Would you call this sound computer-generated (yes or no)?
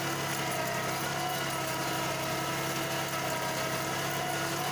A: no